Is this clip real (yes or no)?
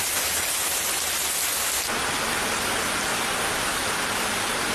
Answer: yes